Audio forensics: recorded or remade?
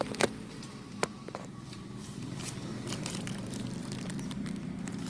remade